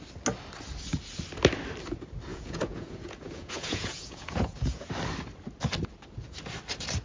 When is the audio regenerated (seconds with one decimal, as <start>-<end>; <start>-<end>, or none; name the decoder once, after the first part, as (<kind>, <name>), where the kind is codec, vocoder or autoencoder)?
2.3-4.9 (vocoder, Vocos)